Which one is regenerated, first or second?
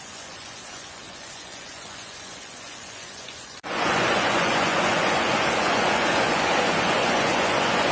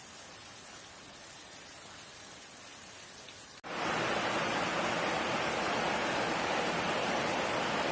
first